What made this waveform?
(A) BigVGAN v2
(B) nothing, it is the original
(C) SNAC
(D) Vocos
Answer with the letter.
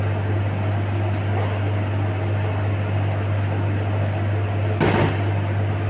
A